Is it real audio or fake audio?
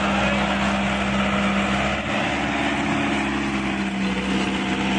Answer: real